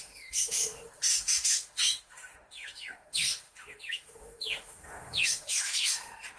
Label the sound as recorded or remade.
remade